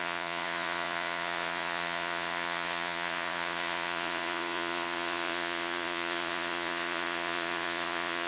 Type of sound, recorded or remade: remade